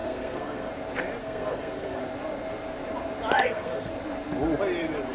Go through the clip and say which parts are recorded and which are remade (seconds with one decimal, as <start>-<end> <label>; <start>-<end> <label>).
0.0-0.7 remade; 0.7-1.2 recorded; 1.2-2.0 remade; 2.0-3.4 recorded; 3.4-3.9 remade; 3.9-5.1 recorded